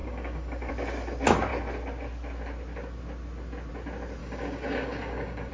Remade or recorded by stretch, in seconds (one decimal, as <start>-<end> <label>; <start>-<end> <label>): 0.0-0.7 remade; 0.7-4.2 recorded; 4.2-5.5 remade